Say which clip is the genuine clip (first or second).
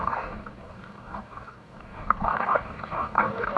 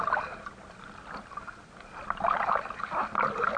second